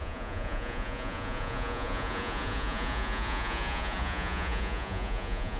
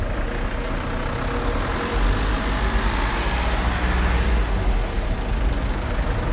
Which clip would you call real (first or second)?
second